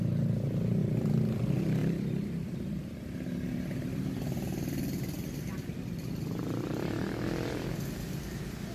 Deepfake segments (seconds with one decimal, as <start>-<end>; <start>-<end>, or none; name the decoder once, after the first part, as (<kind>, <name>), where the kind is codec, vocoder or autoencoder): 0.8-1.4 (vocoder, BigVGAN v2); 1.8-6.7